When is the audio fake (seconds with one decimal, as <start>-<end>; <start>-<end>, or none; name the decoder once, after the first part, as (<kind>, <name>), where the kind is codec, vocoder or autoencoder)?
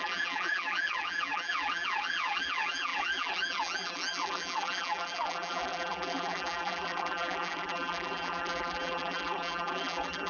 0.0-10.3 (vocoder, BigVGAN v2)